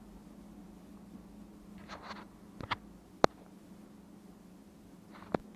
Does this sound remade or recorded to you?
recorded